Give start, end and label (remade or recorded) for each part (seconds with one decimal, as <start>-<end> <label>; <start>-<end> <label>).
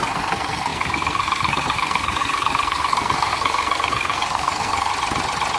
0.0-4.9 remade; 4.9-5.6 recorded